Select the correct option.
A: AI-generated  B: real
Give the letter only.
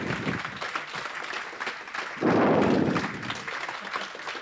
B